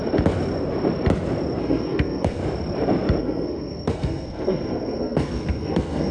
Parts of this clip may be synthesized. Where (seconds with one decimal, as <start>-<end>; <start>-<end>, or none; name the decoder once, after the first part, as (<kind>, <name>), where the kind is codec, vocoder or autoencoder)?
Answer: 1.6-2.4 (codec, SNAC); 3.2-6.1